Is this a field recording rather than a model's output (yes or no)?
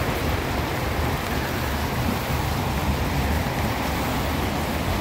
no